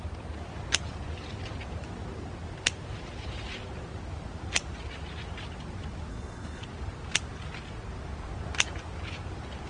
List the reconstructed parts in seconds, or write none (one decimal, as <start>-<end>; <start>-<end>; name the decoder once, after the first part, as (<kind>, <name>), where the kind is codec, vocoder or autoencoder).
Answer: 6.1-6.6 (codec, SNAC)